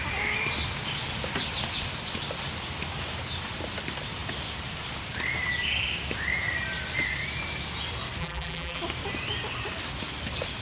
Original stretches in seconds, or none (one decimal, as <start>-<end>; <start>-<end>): 0.0-8.2; 8.8-10.6